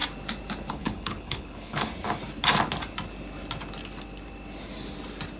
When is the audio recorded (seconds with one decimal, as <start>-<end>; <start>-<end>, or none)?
0.0-0.7; 1.9-5.4